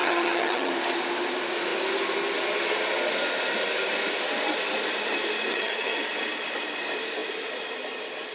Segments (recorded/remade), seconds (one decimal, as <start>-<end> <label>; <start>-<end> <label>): 0.0-0.7 remade; 0.7-5.5 recorded; 5.5-6.0 remade; 6.0-8.3 recorded